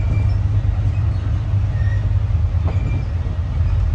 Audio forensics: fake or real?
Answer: real